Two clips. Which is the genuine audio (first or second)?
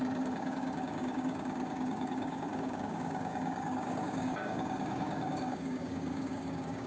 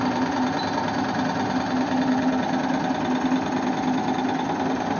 second